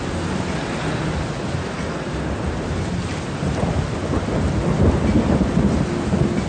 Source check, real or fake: real